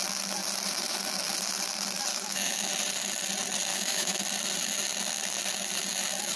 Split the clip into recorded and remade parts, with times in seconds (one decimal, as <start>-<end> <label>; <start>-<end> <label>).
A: 0.0-2.1 recorded; 2.1-2.6 remade; 2.6-3.7 recorded; 3.7-4.2 remade; 4.2-6.4 recorded

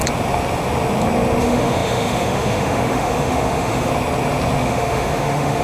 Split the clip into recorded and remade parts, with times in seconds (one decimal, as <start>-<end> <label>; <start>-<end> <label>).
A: 0.0-1.4 recorded; 1.4-3.9 remade; 3.9-4.6 recorded; 4.6-5.6 remade

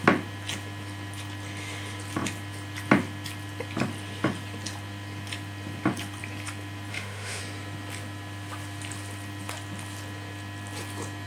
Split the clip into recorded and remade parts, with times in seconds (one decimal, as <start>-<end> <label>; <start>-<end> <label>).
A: 0.0-6.9 recorded; 6.9-7.4 remade; 7.4-11.3 recorded

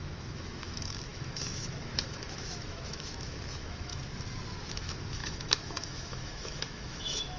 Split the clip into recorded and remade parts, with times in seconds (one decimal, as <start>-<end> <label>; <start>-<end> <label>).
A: 0.0-3.9 remade; 3.9-4.7 recorded; 4.7-7.4 remade

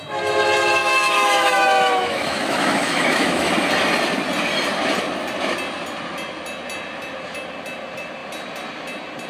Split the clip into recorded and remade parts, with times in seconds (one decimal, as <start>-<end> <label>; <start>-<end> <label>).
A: 0.0-0.8 recorded; 0.8-3.5 remade; 3.5-9.3 recorded